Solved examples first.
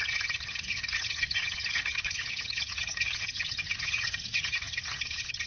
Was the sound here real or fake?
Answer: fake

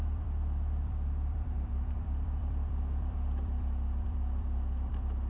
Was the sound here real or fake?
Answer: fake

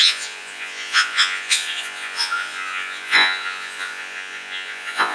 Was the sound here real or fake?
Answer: fake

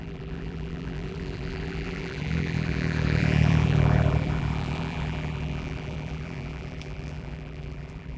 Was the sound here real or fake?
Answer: fake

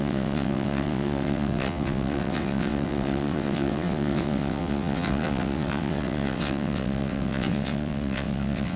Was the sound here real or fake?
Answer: fake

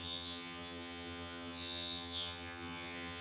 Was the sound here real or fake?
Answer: fake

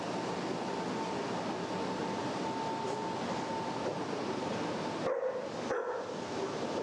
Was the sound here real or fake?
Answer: real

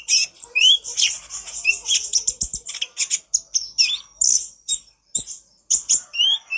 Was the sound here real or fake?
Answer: real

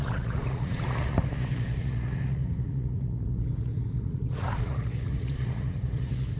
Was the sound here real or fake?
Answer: fake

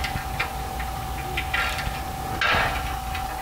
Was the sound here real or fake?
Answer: real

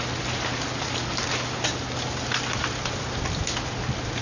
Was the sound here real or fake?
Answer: real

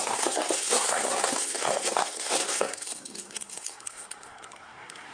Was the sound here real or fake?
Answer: fake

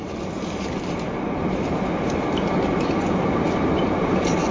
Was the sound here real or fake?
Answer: fake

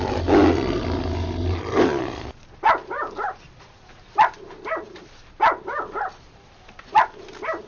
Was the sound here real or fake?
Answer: real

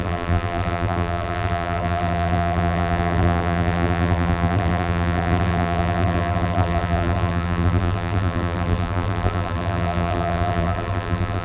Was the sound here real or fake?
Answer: fake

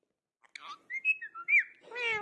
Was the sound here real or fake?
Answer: real